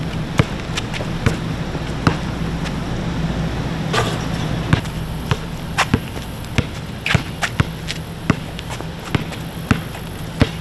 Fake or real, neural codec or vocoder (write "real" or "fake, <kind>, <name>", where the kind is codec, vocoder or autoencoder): real